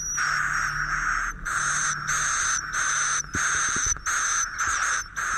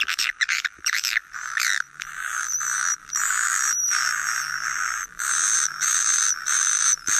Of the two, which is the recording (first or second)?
first